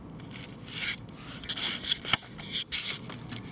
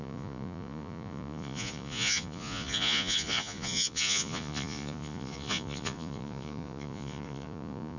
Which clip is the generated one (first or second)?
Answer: second